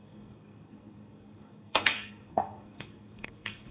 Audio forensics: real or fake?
fake